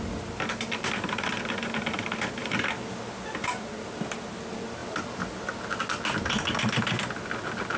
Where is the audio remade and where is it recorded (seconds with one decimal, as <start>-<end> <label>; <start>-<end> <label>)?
0.0-2.4 recorded; 2.4-3.5 remade; 3.5-7.8 recorded